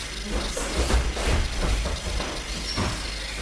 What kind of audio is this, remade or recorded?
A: recorded